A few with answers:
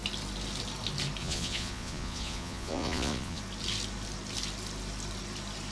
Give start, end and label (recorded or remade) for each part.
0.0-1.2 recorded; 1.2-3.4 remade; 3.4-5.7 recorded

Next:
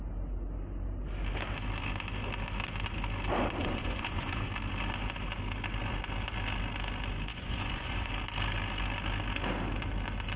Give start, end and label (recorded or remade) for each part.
0.0-3.6 recorded; 3.6-4.5 remade; 4.5-7.3 recorded; 7.3-8.1 remade; 8.1-10.4 recorded

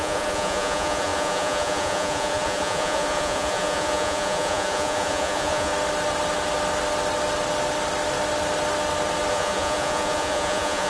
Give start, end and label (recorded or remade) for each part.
0.0-5.7 remade; 5.7-9.3 recorded; 9.3-10.9 remade

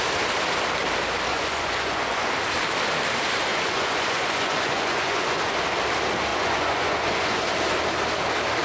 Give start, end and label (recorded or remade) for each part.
0.0-1.3 recorded; 1.3-2.3 remade; 2.3-3.5 recorded; 3.5-5.4 remade; 5.4-6.3 recorded; 6.3-7.4 remade; 7.4-8.6 recorded

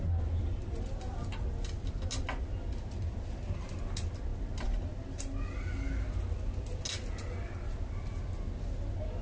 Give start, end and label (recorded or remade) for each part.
0.0-9.2 recorded

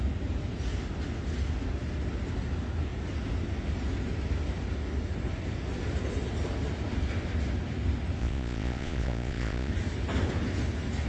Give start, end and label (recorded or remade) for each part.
0.0-8.2 recorded; 8.2-9.7 remade; 9.7-11.1 recorded